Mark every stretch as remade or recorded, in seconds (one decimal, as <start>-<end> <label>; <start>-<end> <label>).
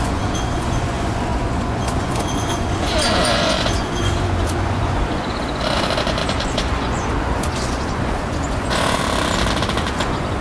0.0-9.0 remade; 9.0-9.8 recorded; 9.8-10.4 remade